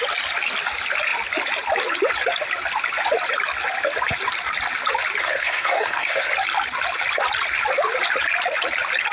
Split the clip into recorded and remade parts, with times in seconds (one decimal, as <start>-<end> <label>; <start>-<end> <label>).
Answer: 0.0-5.2 recorded; 5.2-6.3 remade; 6.3-9.1 recorded